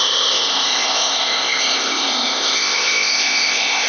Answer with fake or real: fake